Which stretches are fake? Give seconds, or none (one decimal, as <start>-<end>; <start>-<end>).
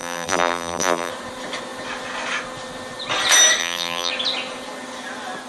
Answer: 0.0-1.1; 3.6-4.1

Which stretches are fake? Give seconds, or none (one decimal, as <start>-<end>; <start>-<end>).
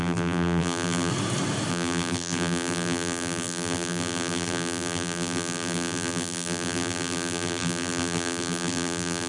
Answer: 0.0-1.1; 1.7-9.3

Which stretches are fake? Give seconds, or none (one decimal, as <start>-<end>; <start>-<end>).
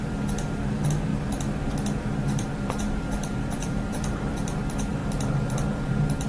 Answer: 0.0-5.0